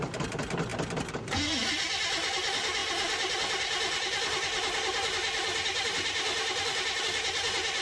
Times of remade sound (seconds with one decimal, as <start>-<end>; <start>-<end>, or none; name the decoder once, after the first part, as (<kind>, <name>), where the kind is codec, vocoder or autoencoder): 2.8-7.0 (vocoder, BigVGAN v2)